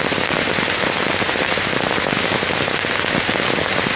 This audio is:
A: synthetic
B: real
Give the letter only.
B